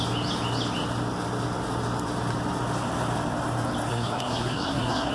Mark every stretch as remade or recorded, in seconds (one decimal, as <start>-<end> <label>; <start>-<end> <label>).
0.0-3.9 recorded; 3.9-5.1 remade